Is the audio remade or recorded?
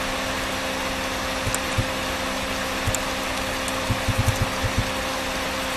recorded